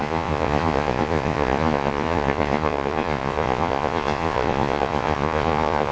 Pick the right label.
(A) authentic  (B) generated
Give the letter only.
B